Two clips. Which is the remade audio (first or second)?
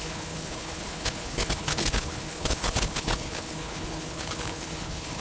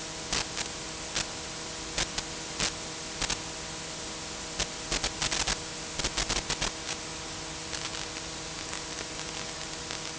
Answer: first